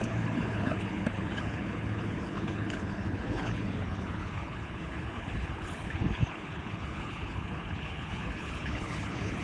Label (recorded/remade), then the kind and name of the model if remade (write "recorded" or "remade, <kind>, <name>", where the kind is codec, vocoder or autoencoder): remade, codec, HILCodec